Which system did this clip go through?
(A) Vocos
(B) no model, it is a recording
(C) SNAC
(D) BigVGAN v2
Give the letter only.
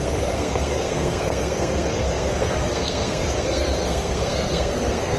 C